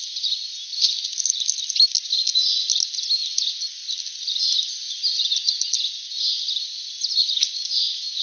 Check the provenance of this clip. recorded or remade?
recorded